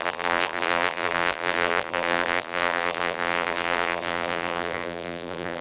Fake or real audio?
fake